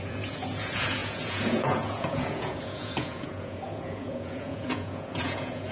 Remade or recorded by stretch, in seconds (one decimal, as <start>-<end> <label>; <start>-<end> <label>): 0.0-5.7 remade

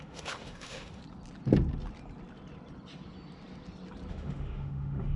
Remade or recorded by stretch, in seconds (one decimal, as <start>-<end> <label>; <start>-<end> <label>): 0.0-1.0 remade; 1.0-4.1 recorded; 4.1-5.2 remade

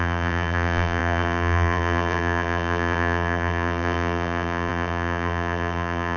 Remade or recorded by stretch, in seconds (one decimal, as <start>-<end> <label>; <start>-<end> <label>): 0.0-6.2 remade

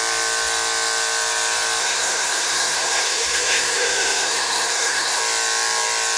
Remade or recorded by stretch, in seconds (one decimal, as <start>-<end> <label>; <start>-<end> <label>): 0.0-1.8 recorded; 1.8-5.2 remade; 5.2-6.2 recorded

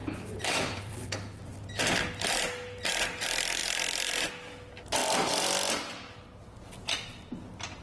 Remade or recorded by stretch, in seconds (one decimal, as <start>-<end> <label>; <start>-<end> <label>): 0.0-1.8 remade; 1.8-3.6 recorded; 3.6-4.3 remade; 4.3-5.0 recorded; 5.0-6.4 remade; 6.4-7.8 recorded

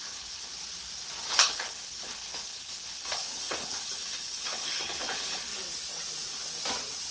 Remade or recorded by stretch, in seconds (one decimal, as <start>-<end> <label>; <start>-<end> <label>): 0.0-0.5 remade; 0.5-1.3 recorded; 1.3-5.5 remade; 5.5-7.1 recorded

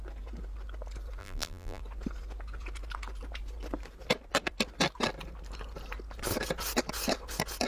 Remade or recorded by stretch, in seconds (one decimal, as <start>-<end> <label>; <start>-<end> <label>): 0.0-1.2 recorded; 1.2-1.8 remade; 1.8-7.7 recorded